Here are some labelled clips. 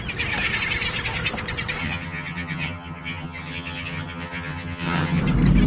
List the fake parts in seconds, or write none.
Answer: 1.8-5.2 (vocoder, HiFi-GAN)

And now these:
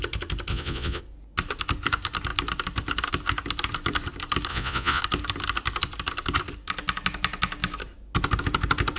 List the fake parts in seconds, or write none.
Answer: 0.5-1.0 (vocoder, Vocos); 4.5-5.0

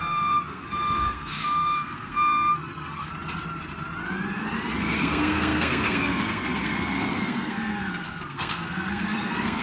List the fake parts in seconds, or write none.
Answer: 0.0-3.1 (codec, SNAC); 4.8-9.6

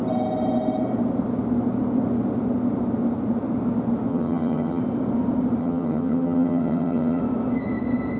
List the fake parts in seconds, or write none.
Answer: 4.1-4.8 (vocoder, HiFi-GAN); 5.6-7.2

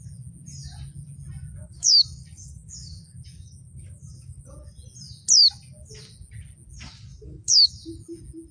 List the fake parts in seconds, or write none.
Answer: 1.6-4.5 (codec, DAC); 7.1-7.7

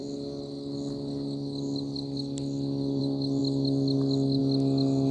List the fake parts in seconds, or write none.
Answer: none

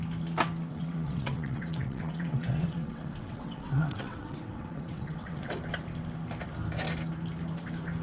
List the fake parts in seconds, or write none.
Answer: 0.7-5.5 (vocoder, WaveNeXt)

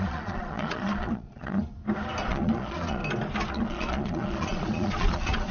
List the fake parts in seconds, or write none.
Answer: 0.0-1.7 (vocoder, Vocos); 2.3-3.0; 3.5-5.5